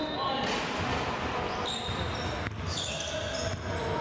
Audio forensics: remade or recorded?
recorded